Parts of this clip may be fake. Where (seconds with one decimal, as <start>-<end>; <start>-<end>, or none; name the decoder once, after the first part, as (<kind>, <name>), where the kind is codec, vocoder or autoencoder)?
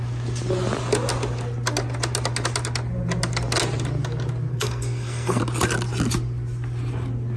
4.5-5.4 (codec, SNAC)